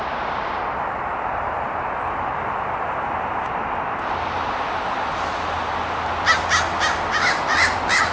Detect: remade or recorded recorded